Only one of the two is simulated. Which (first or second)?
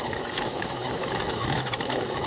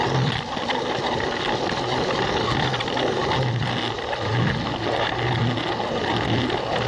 first